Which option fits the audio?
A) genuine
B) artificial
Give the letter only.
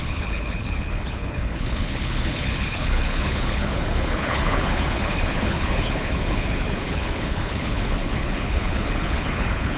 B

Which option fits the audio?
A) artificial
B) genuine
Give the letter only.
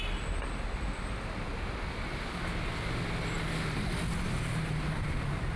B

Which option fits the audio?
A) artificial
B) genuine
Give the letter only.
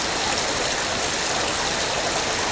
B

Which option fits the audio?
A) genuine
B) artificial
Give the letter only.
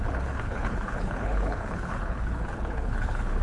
B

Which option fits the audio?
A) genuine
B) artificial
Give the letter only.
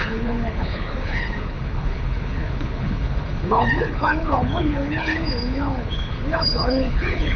B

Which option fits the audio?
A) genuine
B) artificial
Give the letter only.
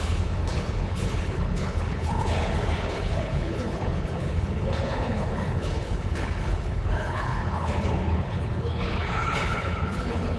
B